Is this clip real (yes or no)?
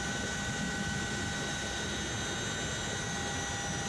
yes